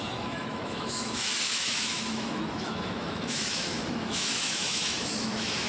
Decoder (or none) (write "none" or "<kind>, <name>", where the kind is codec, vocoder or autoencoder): autoencoder, DAC-VAE